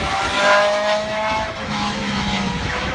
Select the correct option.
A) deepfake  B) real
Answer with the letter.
A